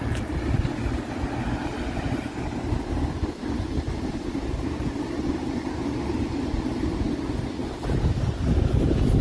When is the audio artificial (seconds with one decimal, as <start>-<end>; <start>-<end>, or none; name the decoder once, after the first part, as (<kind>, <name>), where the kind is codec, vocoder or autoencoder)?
none